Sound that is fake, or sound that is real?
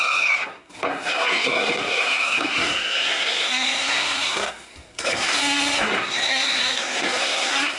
fake